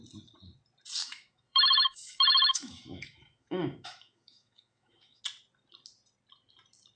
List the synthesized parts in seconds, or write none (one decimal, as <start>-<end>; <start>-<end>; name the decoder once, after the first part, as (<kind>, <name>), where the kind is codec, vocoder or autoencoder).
1.0-5.2 (autoencoder, DAC-VAE)